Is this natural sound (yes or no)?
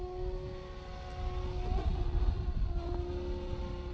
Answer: yes